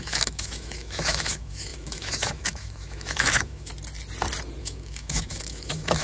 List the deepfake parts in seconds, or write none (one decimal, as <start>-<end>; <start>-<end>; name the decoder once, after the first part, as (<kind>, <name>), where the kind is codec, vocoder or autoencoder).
0.0-3.7 (autoencoder, DAC-VAE); 4.6-6.0